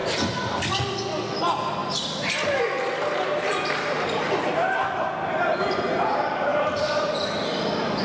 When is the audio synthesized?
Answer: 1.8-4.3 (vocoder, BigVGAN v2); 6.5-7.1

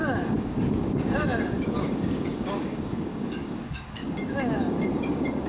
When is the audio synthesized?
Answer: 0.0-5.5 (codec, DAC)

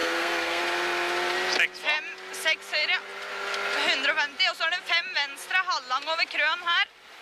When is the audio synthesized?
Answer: 0.0-0.6 (codec, SNAC)

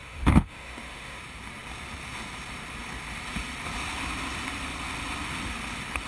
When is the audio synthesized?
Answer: 0.0-1.2 (autoencoder, DAC-VAE)

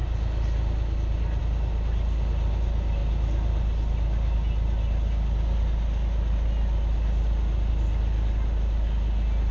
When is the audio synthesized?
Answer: none

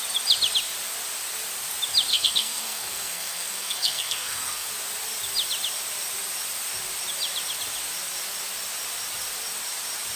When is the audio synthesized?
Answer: 2.1-4.7 (codec, SNAC)

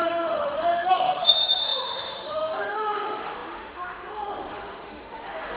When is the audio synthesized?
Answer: 0.0-5.6 (autoencoder, DAC-VAE)

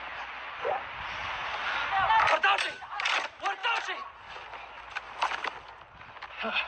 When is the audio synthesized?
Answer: none